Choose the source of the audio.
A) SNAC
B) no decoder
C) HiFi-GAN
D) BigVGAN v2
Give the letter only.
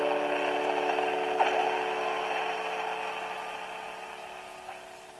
B